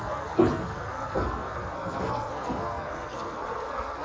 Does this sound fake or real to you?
fake